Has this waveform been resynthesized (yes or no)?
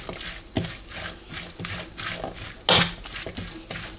no